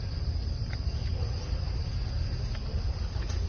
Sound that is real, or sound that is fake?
real